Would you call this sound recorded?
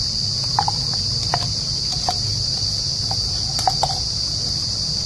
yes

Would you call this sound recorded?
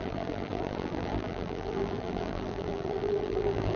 no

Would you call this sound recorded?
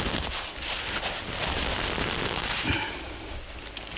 yes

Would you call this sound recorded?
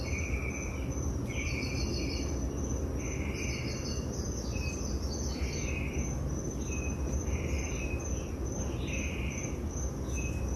yes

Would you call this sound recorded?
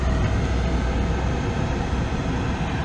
yes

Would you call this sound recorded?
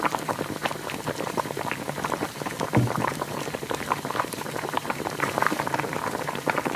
no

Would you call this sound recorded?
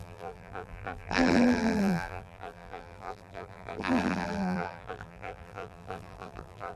no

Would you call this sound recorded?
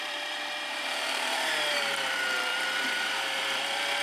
no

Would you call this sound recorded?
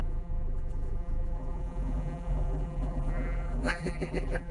no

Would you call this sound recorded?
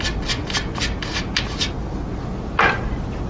yes